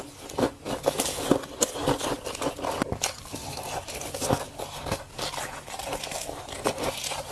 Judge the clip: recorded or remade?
recorded